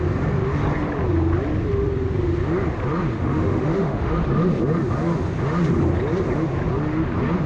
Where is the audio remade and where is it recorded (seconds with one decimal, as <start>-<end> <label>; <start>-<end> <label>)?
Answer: 0.0-3.1 recorded; 3.1-4.1 remade; 4.1-7.5 recorded